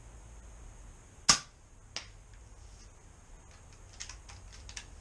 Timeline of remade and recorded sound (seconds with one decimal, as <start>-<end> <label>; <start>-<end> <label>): 0.0-5.0 recorded